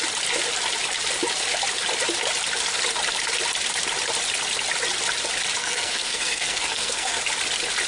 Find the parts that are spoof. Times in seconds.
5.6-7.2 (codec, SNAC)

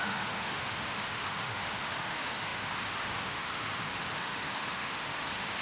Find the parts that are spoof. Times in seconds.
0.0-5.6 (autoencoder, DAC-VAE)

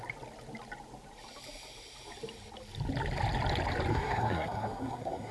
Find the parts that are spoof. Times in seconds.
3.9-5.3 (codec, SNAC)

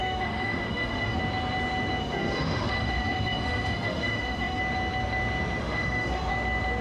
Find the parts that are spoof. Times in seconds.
0.0-1.2 (autoencoder, DAC-VAE); 2.0-4.6; 5.6-6.3

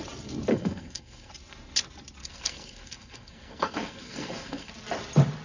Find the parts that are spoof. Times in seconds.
0.5-1.3 (codec, SNAC); 2.2-4.7

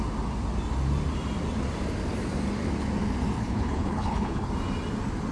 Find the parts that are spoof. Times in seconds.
3.4-4.5 (codec, HILCodec)

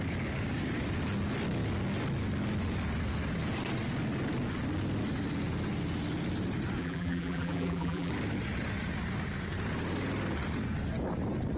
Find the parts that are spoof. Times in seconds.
6.8-8.1 (vocoder, BigVGAN v2)